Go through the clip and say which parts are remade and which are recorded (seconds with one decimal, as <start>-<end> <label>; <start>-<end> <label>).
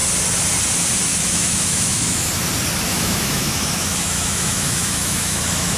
0.0-1.1 recorded; 1.1-2.3 remade; 2.3-2.9 recorded; 2.9-5.8 remade